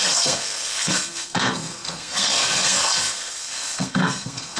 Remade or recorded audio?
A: remade